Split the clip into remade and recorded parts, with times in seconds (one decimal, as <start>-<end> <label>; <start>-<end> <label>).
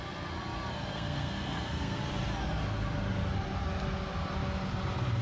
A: 0.0-0.9 recorded; 0.9-2.0 remade; 2.0-5.2 recorded